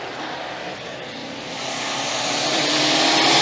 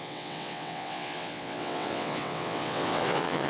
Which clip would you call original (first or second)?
first